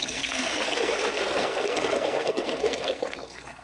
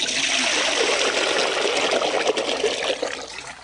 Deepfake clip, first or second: first